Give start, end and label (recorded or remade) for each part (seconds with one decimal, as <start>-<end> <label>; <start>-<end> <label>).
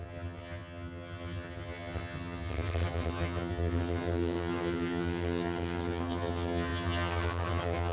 0.0-7.9 remade